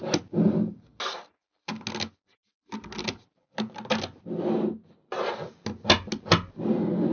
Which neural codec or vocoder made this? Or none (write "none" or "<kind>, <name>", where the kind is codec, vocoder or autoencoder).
none